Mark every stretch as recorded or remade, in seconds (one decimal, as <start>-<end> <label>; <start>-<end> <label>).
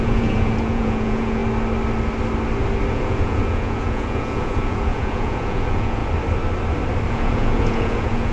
0.0-1.4 remade; 1.4-2.9 recorded; 2.9-6.0 remade; 6.0-7.1 recorded; 7.1-8.3 remade